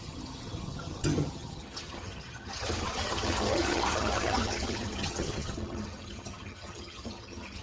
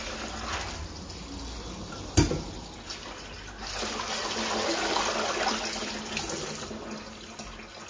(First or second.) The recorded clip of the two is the second